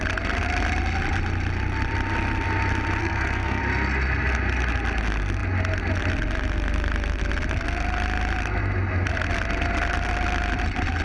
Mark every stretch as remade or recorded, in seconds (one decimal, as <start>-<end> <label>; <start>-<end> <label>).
0.0-3.0 recorded; 3.0-3.6 remade; 3.6-11.0 recorded